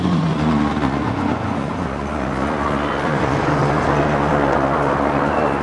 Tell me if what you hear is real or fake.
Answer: fake